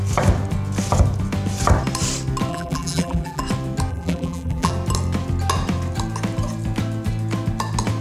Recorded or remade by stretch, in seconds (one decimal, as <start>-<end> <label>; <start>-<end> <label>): 0.0-2.5 recorded; 2.5-3.4 remade; 3.4-3.9 recorded; 3.9-4.7 remade; 4.7-8.0 recorded